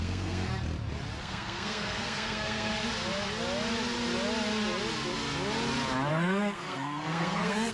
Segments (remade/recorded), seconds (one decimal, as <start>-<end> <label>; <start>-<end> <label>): 0.0-0.5 remade; 0.5-1.2 recorded; 1.2-2.7 remade; 2.7-6.1 recorded; 6.1-7.7 remade